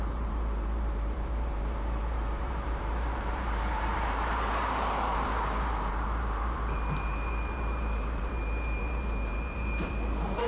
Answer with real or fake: fake